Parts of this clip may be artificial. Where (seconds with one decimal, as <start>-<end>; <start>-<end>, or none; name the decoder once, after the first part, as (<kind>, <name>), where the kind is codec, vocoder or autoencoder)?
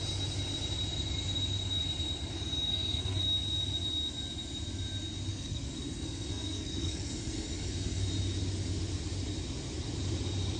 2.7-3.2 (codec, SNAC); 5.3-8.1